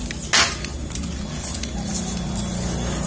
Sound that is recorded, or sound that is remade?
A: recorded